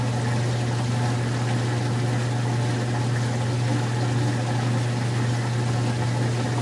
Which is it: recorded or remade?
recorded